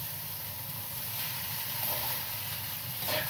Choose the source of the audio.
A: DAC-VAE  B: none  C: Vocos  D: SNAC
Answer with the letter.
B